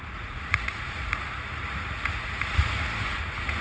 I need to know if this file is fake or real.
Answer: fake